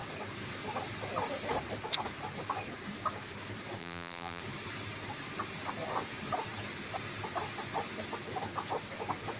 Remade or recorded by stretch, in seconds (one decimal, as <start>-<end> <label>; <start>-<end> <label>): 0.0-3.8 recorded; 3.8-4.4 remade; 4.4-9.4 recorded